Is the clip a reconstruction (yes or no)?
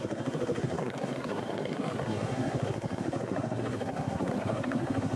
yes